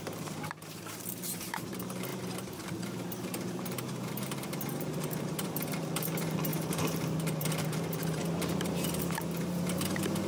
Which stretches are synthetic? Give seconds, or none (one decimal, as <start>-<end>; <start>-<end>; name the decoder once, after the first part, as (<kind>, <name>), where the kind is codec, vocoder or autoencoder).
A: 0.0-10.3 (vocoder, BigVGAN v2)